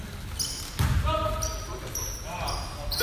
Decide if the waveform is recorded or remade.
recorded